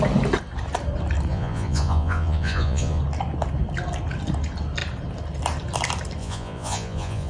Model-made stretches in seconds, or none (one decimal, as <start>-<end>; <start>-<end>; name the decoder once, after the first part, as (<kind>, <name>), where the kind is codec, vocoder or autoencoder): 1.3-3.0 (vocoder, Vocos); 6.2-7.3